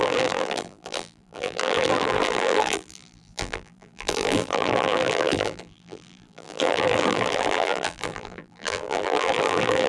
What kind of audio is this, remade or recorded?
remade